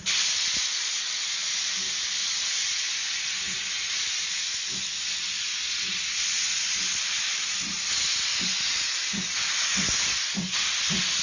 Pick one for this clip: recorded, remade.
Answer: recorded